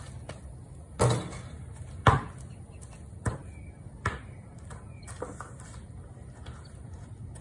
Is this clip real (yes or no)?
yes